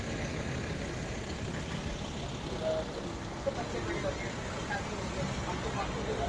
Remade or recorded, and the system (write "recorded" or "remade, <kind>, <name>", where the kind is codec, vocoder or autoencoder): recorded